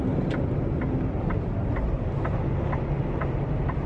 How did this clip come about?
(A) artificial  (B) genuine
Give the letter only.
B